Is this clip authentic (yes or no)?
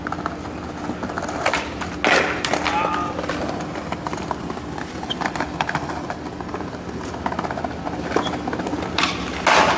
yes